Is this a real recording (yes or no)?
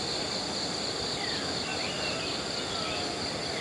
yes